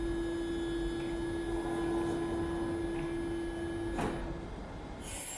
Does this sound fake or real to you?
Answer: real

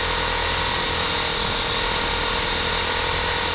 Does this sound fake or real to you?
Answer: real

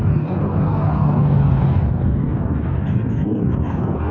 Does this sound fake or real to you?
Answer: fake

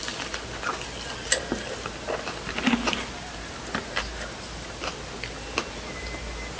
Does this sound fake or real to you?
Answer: real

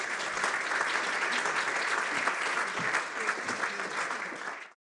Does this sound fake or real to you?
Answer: real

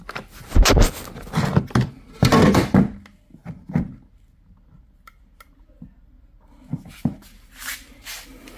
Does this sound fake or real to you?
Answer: real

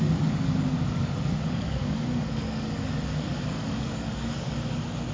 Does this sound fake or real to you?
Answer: fake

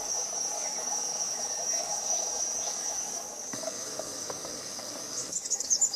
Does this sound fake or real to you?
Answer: fake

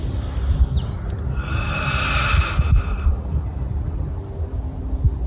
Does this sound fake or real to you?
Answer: real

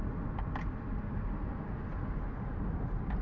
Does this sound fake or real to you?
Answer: real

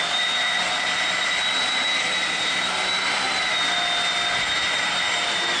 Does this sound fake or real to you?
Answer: real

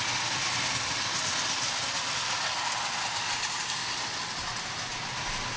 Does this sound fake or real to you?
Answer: real